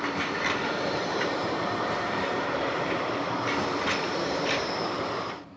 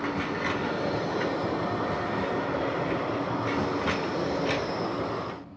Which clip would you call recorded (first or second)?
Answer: second